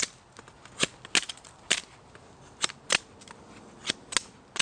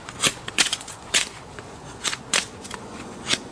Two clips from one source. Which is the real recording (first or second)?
first